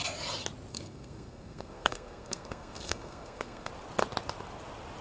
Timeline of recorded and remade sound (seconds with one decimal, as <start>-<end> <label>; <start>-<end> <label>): 0.0-0.7 recorded; 0.7-3.7 remade; 3.7-5.0 recorded